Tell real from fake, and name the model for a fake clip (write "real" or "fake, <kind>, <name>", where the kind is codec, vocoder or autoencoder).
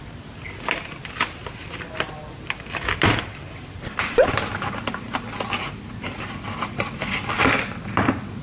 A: real